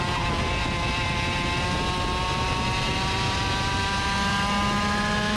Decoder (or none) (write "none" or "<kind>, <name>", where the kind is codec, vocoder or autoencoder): none